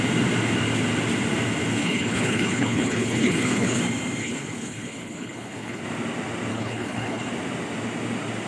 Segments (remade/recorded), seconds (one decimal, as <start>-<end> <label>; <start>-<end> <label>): 0.0-1.8 recorded; 1.8-3.8 remade; 3.8-4.2 recorded; 4.2-5.8 remade; 5.8-6.5 recorded; 6.5-7.3 remade; 7.3-8.5 recorded